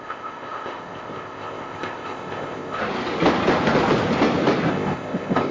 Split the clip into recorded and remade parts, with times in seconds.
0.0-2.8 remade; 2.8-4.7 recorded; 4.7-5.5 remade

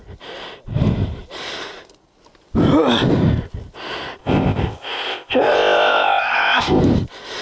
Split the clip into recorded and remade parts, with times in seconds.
0.0-4.2 recorded; 4.2-6.8 remade; 6.8-7.4 recorded

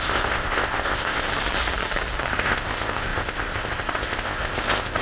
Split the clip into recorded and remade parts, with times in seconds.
0.0-1.3 remade; 1.3-2.3 recorded; 2.3-5.0 remade

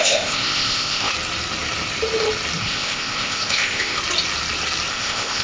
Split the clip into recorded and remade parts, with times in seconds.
0.0-1.1 remade; 1.1-2.6 recorded; 2.6-4.0 remade; 4.0-4.9 recorded; 4.9-5.4 remade